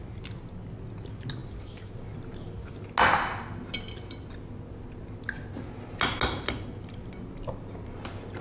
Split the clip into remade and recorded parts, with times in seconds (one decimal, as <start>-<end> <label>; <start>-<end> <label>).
0.0-8.4 recorded